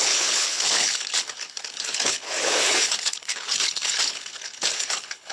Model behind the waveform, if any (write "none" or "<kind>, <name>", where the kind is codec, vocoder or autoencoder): codec, HILCodec